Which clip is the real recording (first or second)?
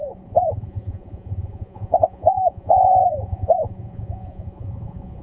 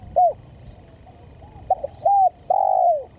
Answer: second